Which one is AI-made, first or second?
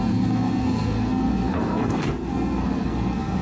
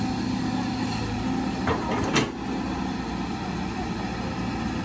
first